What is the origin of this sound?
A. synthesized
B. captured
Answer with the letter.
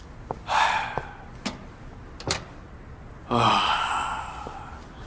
B